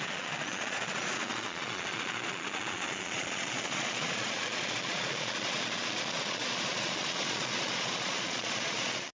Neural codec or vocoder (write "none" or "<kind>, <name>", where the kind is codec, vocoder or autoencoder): vocoder, Vocos